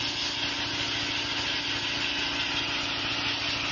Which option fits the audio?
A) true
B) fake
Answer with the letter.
A